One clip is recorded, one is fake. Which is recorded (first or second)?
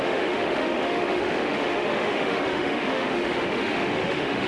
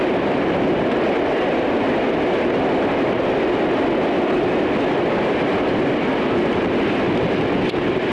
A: second